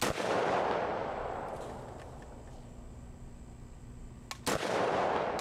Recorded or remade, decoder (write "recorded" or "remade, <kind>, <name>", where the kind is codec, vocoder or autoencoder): recorded